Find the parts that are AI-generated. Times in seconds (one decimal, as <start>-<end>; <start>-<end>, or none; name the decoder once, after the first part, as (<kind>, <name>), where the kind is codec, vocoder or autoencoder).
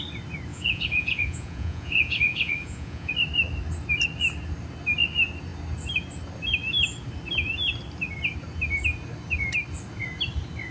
0.5-3.1 (vocoder, Vocos)